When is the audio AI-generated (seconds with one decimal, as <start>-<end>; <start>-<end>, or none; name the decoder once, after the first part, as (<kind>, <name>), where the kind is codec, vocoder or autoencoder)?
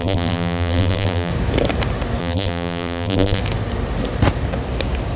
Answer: 0.0-1.3 (vocoder, BigVGAN v2); 2.2-3.4